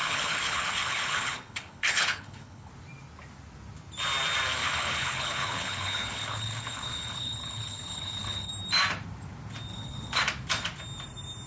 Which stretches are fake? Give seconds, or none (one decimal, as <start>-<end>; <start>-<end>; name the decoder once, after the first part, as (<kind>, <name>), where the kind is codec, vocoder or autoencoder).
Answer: 0.0-2.7 (codec, HILCodec); 4.6-8.5; 9.7-10.2